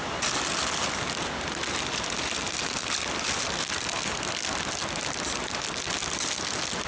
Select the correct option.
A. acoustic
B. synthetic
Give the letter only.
A